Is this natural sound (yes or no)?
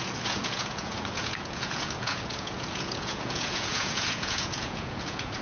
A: no